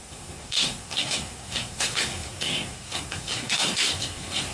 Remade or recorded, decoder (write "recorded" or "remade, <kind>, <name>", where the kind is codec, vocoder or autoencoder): remade, codec, SNAC